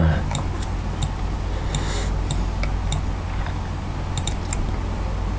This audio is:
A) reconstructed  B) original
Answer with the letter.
B